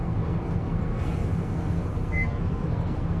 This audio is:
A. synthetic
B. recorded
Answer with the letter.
A